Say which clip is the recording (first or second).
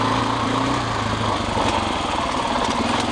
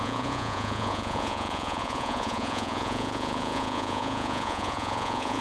first